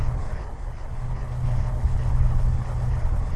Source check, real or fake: fake